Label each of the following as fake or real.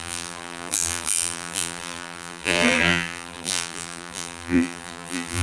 fake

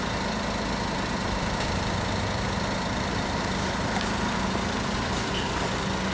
real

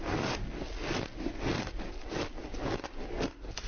real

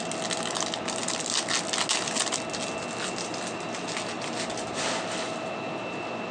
real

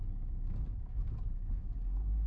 real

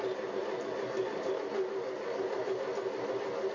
real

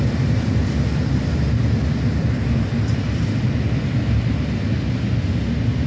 real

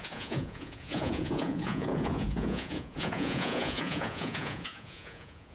fake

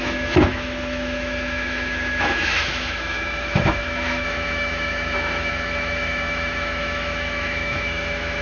fake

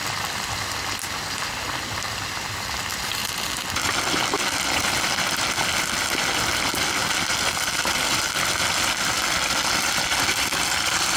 real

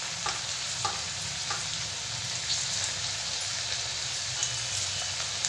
real